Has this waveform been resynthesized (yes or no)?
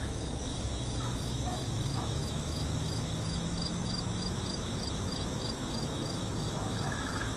yes